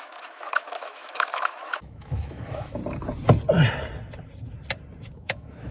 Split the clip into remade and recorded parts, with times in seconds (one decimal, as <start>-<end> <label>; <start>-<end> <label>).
0.0-2.8 remade; 2.8-5.1 recorded; 5.1-5.7 remade